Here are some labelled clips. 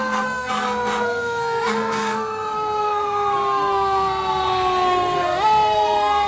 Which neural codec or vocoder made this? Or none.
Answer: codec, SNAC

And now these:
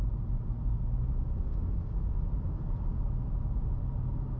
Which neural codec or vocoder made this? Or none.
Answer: none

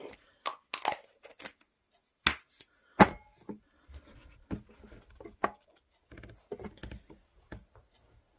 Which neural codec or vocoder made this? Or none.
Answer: none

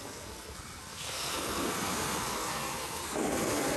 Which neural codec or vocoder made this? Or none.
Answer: codec, SNAC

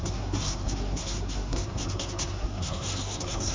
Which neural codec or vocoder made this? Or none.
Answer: codec, SNAC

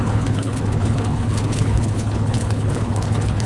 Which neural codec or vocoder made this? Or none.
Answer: codec, HILCodec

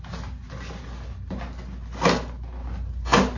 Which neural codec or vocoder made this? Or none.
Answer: none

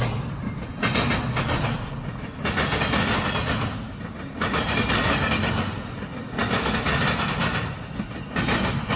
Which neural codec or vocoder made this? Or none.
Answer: none